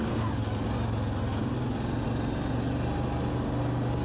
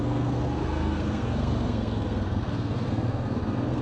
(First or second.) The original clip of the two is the first